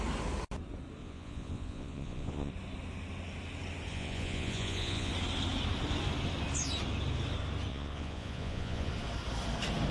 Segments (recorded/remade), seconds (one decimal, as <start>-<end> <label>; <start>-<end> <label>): 0.0-1.0 recorded; 1.0-2.5 remade; 2.5-3.9 recorded; 3.9-5.1 remade; 5.1-7.7 recorded; 7.7-8.9 remade; 8.9-9.9 recorded